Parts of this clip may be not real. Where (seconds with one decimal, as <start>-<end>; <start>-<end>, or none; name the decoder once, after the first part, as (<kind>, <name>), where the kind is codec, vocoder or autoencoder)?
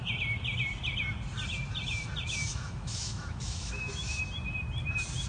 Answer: 2.4-4.2 (autoencoder, DAC-VAE)